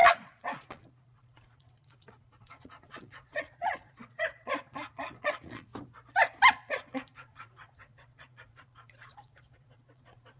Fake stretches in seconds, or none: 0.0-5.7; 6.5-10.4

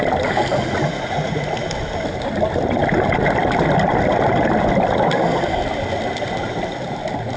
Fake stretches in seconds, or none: 0.8-1.5